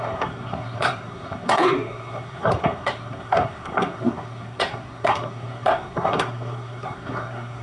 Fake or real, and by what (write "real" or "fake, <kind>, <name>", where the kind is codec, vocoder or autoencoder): fake, codec, SNAC